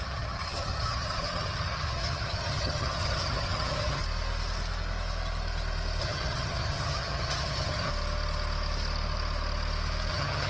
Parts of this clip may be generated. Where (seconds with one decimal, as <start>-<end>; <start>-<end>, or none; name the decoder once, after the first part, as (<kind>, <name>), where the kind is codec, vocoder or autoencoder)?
0.0-4.0 (vocoder, HiFi-GAN); 6.0-7.9; 10.1-10.5